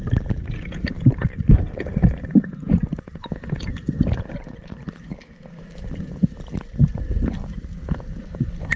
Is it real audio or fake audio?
fake